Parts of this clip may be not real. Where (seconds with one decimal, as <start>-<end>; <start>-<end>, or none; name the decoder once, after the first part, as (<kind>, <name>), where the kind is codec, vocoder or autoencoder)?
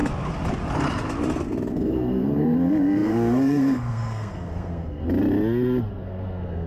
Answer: 1.7-5.0 (codec, SNAC); 5.9-6.7